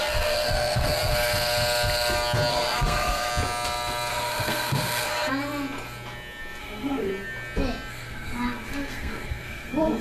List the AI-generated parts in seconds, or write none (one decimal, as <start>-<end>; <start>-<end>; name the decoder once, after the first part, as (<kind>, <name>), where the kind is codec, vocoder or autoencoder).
0.0-1.1 (codec, SNAC); 2.5-3.3; 4.1-5.3; 6.6-7.1; 7.9-10.0